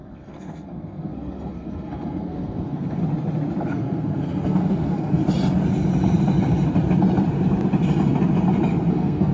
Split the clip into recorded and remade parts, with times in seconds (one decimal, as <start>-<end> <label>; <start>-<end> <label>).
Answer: 0.0-3.0 remade; 3.0-3.7 recorded; 3.7-5.2 remade; 5.2-8.9 recorded; 8.9-9.3 remade